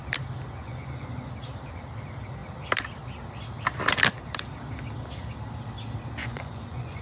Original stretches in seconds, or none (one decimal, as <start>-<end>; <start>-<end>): 0.0-0.6; 1.3-6.2